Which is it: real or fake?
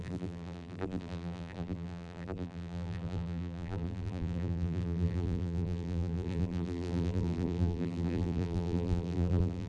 fake